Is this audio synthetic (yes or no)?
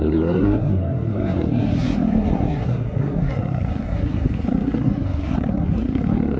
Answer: yes